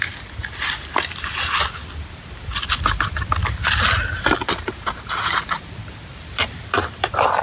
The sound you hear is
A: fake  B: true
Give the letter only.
B